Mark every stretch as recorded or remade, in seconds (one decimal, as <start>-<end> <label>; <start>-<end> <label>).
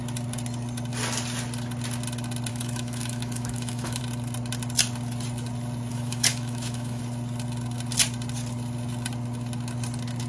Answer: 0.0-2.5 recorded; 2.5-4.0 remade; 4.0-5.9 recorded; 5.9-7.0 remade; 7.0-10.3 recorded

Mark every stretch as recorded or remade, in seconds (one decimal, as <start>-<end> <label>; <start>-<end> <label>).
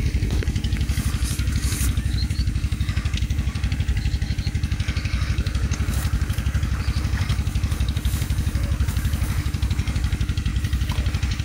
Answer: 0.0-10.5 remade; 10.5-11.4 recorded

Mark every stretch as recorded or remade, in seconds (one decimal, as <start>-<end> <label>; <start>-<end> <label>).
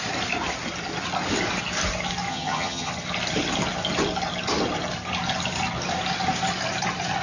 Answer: 0.0-2.3 recorded; 2.3-2.9 remade; 2.9-7.2 recorded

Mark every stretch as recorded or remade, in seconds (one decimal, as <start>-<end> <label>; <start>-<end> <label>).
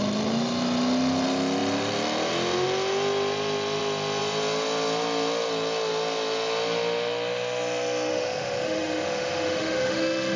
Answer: 0.0-8.1 recorded; 8.1-10.4 remade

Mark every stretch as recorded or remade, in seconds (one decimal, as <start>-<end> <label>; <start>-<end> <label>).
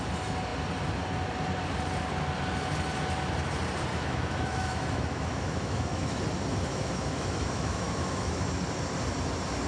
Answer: 0.0-3.9 recorded; 3.9-6.2 remade; 6.2-6.7 recorded; 6.7-8.5 remade; 8.5-9.7 recorded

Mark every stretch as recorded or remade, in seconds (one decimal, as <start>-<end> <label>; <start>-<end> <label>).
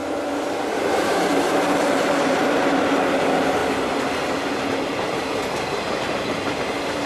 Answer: 0.0-7.1 remade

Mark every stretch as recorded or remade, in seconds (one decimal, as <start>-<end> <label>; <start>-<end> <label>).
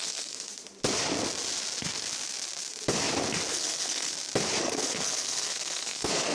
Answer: 0.0-0.5 remade; 0.5-3.5 recorded; 3.5-4.1 remade; 4.1-4.6 recorded; 4.6-6.3 remade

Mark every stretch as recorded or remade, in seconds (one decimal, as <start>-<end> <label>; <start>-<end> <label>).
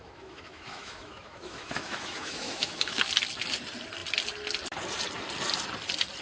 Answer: 0.0-3.0 remade; 3.0-6.2 recorded